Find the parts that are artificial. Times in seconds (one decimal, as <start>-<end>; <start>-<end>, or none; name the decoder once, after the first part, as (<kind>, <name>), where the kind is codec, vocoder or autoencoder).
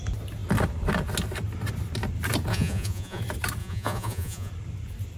2.5-3.2 (vocoder, Vocos); 3.6-4.5